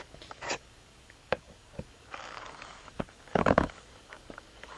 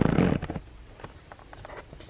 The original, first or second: second